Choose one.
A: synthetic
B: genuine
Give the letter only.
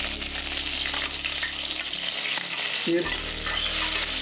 B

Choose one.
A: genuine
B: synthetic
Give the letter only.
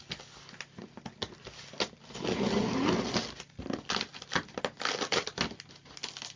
A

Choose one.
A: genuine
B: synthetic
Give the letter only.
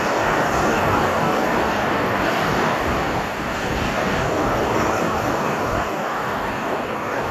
B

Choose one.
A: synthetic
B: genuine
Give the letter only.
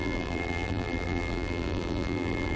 A